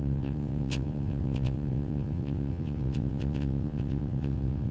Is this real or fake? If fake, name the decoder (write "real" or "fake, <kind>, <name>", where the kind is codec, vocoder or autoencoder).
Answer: fake, vocoder, WaveNeXt